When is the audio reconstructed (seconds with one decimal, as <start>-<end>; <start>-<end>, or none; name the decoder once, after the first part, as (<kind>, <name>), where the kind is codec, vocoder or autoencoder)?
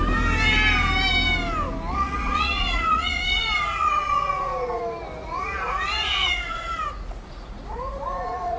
1.9-4.8 (vocoder, Vocos); 5.2-8.6